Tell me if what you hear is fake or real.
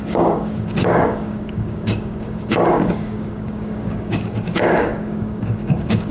fake